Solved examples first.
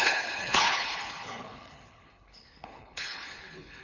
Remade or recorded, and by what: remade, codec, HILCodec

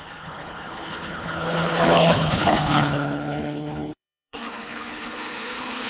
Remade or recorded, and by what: remade, codec, HILCodec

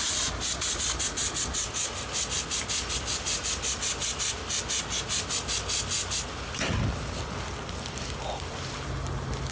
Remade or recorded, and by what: recorded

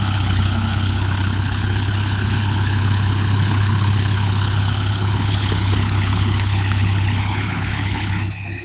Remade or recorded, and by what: remade, codec, HILCodec